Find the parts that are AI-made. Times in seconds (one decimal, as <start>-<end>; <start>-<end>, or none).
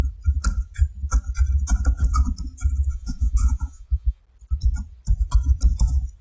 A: 2.9-4.2